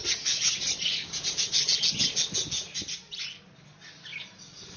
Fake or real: real